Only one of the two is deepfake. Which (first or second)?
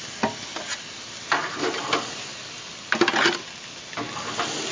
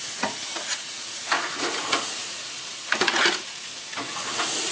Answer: second